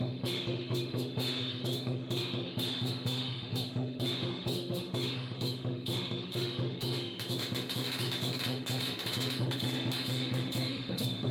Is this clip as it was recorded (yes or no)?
no